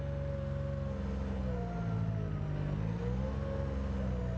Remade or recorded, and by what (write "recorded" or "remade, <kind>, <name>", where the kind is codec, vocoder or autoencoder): recorded